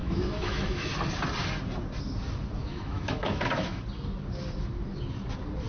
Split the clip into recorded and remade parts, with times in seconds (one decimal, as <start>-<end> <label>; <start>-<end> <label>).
0.0-0.9 remade; 0.9-2.6 recorded; 2.6-3.8 remade; 3.8-5.7 recorded